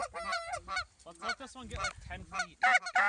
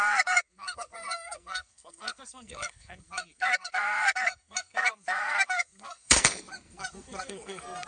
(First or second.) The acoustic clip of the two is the first